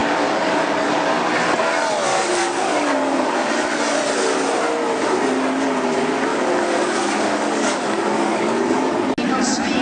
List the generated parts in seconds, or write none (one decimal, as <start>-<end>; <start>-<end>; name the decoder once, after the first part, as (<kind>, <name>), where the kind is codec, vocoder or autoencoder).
0.0-0.9 (codec, DAC); 2.1-3.3; 6.3-8.9